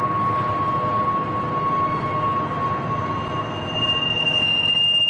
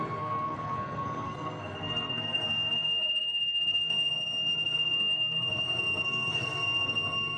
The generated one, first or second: second